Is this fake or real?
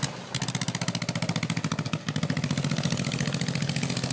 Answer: real